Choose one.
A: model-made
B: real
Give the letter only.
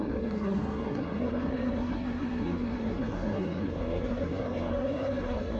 A